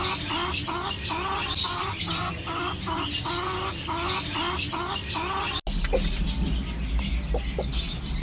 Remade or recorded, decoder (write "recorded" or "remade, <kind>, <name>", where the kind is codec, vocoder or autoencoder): recorded